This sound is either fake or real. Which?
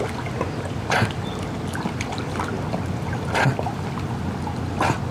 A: real